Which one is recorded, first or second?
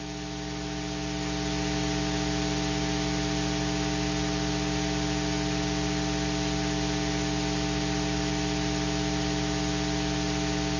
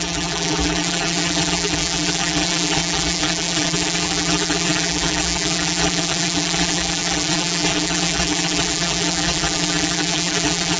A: first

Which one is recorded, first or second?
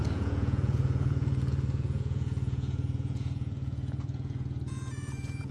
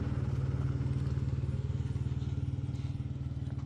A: second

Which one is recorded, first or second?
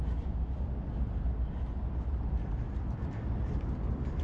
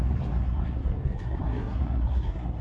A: first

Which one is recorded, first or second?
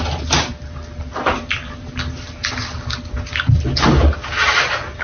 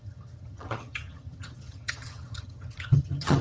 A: first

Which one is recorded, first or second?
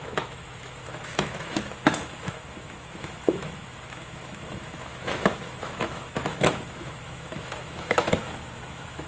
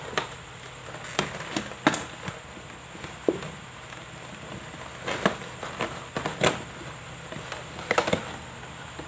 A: second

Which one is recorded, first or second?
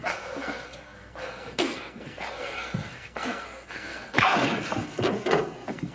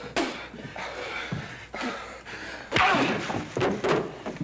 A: second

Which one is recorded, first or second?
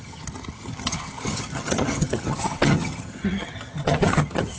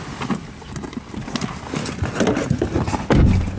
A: second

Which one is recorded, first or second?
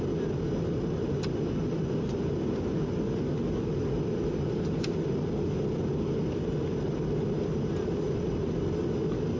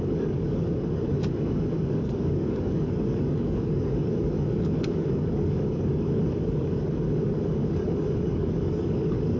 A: first